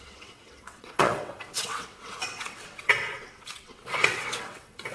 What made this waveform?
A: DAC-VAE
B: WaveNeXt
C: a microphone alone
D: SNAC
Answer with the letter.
B